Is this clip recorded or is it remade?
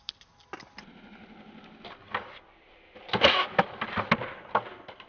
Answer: recorded